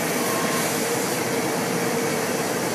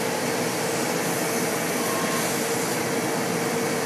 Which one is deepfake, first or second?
first